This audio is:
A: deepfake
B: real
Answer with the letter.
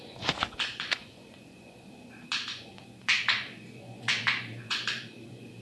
A